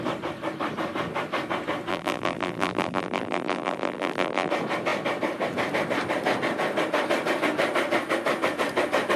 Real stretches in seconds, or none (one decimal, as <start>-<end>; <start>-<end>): 0.0-1.9; 4.5-9.2